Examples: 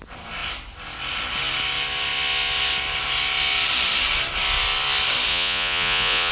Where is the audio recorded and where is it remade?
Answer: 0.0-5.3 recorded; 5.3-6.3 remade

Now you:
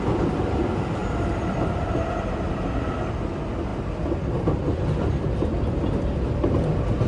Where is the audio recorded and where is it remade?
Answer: 0.0-7.1 recorded